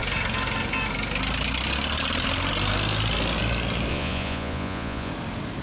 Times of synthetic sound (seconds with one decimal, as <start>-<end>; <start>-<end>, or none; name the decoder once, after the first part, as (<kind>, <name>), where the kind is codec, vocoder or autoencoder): 3.9-5.1 (vocoder, Vocos)